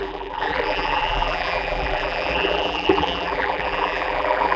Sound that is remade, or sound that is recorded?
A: remade